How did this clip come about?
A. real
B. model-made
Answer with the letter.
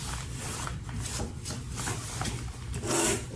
B